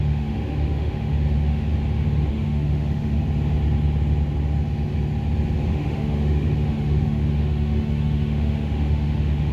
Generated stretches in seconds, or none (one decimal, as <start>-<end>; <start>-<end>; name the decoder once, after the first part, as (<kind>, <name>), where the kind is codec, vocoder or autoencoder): 0.0-1.7 (autoencoder, DAC-VAE); 2.3-3.2; 5.7-9.5